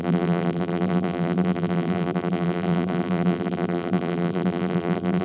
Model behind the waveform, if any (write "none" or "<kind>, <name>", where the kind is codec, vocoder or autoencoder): vocoder, BigVGAN v2